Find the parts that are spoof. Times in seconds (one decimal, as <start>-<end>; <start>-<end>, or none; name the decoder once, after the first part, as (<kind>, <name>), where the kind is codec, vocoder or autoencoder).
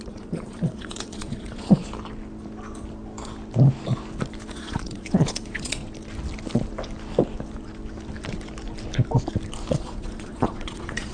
0.0-1.8 (vocoder, Vocos); 4.5-5.8; 9.7-11.1